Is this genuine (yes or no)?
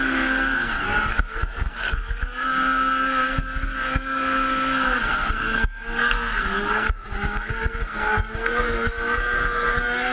no